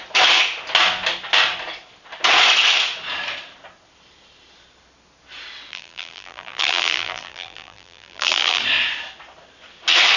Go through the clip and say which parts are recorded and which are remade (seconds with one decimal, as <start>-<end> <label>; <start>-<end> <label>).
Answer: 0.0-5.7 recorded; 5.7-8.6 remade; 8.6-10.2 recorded